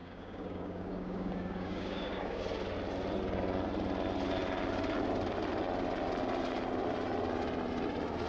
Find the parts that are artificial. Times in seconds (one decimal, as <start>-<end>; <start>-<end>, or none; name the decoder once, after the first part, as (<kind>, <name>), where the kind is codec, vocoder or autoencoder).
0.0-2.4 (codec, DAC)